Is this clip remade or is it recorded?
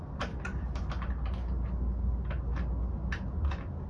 recorded